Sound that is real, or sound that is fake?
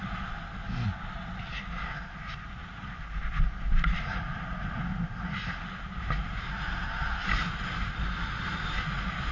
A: real